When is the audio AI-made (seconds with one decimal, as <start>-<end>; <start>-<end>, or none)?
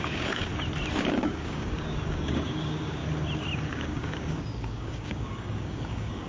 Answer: 0.0-0.5; 1.0-3.0; 3.7-6.3